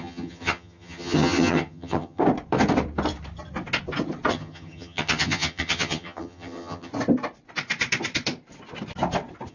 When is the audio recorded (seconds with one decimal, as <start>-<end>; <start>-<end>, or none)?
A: 2.2-4.3; 6.9-9.5